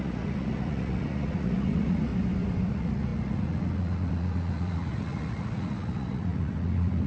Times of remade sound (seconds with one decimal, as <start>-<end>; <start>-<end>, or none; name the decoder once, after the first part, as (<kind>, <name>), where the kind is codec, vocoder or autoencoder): 0.0-2.1 (vocoder, Vocos); 2.7-7.1